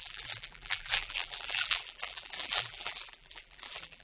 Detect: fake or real fake